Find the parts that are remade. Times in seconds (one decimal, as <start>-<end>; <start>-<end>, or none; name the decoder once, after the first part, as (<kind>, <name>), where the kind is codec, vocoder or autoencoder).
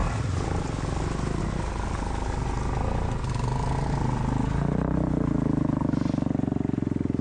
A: none